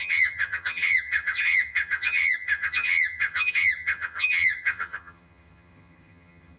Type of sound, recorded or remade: remade